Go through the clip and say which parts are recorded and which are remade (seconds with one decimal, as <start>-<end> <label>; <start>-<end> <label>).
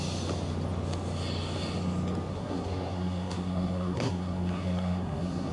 0.0-2.3 recorded; 2.3-5.5 remade